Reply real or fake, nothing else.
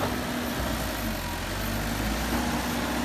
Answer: real